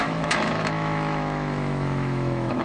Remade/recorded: remade